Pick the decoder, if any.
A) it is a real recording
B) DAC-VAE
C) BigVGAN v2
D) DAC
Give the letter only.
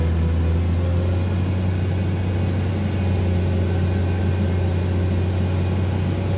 A